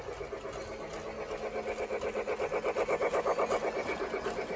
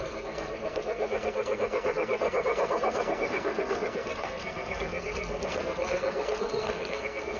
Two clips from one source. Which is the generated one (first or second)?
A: second